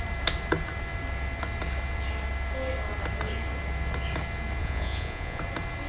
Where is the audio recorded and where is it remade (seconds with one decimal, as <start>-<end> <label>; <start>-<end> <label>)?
0.0-4.6 recorded; 4.6-5.4 remade; 5.4-5.9 recorded